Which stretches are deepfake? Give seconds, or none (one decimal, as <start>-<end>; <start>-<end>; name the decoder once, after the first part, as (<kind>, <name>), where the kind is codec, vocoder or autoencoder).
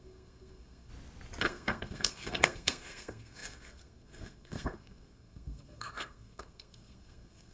0.0-0.9 (codec, SNAC); 1.4-7.5